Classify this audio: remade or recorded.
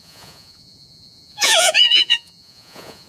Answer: remade